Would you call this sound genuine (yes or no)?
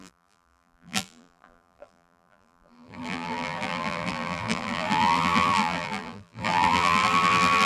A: no